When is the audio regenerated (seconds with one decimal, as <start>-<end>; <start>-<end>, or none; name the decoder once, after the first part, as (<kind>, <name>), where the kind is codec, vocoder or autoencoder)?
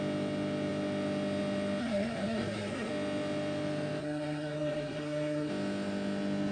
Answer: 1.8-2.9 (codec, SNAC); 4.0-5.5